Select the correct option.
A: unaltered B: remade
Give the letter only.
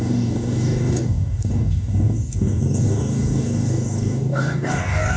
B